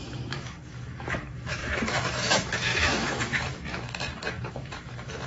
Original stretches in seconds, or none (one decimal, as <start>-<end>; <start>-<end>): none